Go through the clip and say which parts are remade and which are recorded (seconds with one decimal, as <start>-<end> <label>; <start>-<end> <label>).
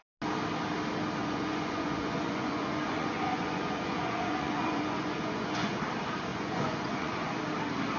0.0-1.2 recorded; 1.2-5.8 remade; 5.8-6.3 recorded; 6.3-7.4 remade; 7.4-8.0 recorded